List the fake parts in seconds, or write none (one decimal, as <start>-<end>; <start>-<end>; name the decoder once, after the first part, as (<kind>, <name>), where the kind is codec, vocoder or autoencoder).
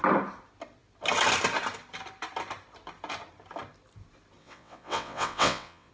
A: 4.4-5.9 (vocoder, WaveNeXt)